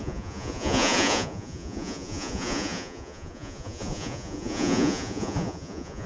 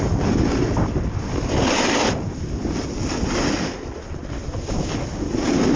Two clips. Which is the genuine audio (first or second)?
second